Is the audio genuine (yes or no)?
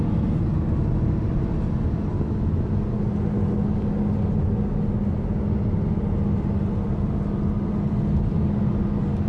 yes